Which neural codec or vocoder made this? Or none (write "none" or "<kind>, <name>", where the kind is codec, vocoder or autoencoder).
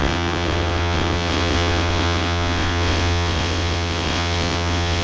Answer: vocoder, WaveNeXt